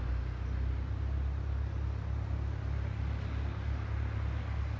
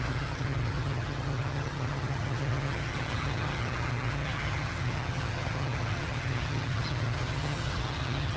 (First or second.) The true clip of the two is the first